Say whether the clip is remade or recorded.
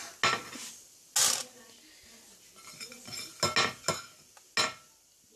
recorded